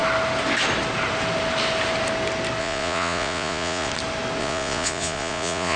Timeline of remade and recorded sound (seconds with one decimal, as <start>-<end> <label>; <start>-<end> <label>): 0.0-2.6 recorded; 2.6-3.9 remade; 3.9-4.4 recorded; 4.4-5.8 remade